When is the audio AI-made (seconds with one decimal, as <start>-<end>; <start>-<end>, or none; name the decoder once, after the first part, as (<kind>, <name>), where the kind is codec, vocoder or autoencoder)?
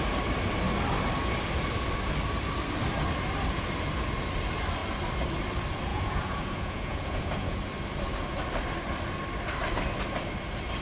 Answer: 5.9-7.6 (vocoder, Vocos)